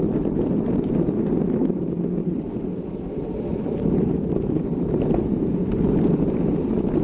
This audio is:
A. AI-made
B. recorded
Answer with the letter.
A